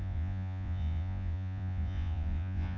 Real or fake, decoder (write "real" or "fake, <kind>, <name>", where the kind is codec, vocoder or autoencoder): fake, vocoder, Vocos